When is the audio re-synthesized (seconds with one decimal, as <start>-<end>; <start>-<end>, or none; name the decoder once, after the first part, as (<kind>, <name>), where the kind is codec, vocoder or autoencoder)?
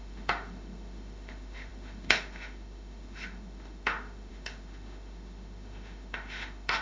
0.0-6.8 (autoencoder, DAC-VAE)